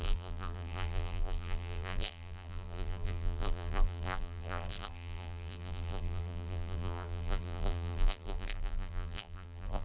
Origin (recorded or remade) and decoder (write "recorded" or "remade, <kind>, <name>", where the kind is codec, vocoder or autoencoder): remade, vocoder, BigVGAN v2